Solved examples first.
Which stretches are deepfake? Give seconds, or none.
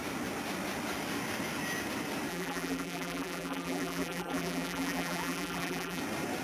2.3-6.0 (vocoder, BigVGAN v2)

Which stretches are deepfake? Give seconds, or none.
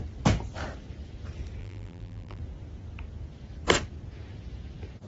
1.6-2.4 (vocoder, BigVGAN v2)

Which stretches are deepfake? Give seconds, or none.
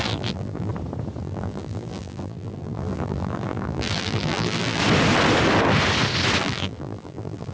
0.0-0.7 (vocoder, BigVGAN v2); 1.2-4.8; 6.4-7.5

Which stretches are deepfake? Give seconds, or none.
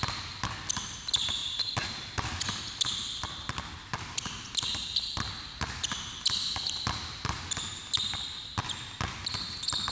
none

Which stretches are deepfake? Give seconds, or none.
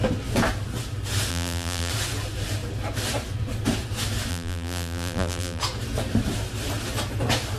1.3-1.9 (vocoder, BigVGAN v2); 4.3-5.6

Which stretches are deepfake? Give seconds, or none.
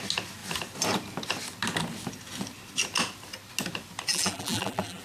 4.1-5.0 (vocoder, BigVGAN v2)